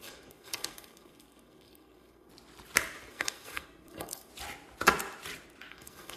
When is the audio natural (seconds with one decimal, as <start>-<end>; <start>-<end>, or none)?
2.3-3.1; 4.3-5.7